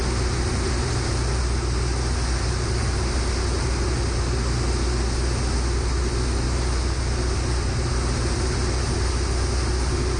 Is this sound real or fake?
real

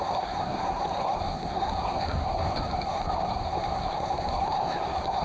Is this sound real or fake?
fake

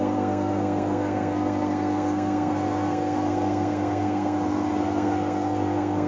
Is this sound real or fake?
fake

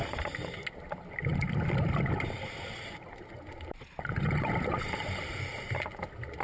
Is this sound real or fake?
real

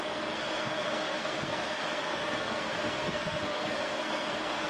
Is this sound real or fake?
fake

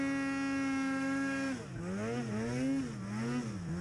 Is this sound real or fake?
real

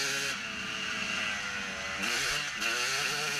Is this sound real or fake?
real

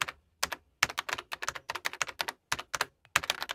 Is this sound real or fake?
real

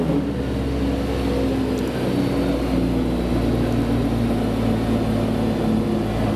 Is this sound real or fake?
real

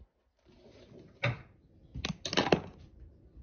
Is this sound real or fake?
real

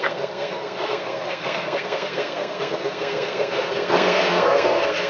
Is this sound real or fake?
fake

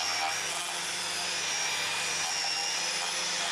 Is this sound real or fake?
real